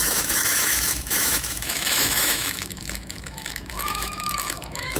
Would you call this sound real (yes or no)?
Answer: no